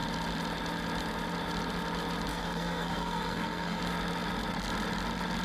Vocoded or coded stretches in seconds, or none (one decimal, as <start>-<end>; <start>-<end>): 2.3-3.8

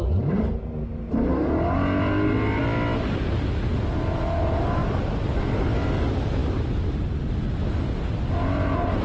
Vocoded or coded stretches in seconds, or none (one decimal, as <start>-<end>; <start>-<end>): none

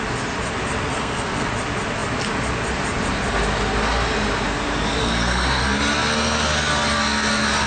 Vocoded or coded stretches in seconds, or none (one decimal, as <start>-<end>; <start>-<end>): 0.9-1.5; 5.0-5.6

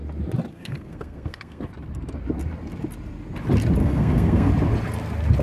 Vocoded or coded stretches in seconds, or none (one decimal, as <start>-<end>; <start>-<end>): 0.5-1.6; 3.8-4.5

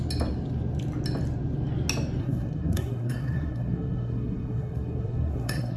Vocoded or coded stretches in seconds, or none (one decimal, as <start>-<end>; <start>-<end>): 2.2-5.8

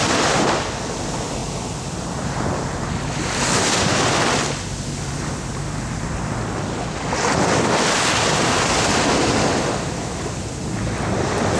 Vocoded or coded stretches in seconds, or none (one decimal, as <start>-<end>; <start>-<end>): none

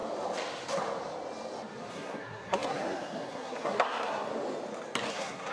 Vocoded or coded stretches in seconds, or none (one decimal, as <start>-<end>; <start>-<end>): 1.9-4.3; 5.1-5.5

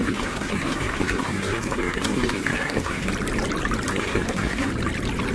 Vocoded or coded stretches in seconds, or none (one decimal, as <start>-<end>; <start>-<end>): 0.0-3.1; 3.9-4.7